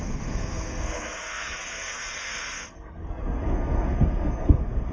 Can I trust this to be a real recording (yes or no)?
no